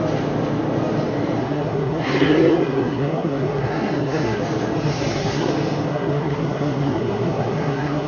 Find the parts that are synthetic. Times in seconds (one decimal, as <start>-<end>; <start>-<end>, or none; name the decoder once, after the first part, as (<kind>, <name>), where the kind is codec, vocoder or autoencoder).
1.4-4.4 (codec, SNAC); 4.9-5.5; 5.9-8.1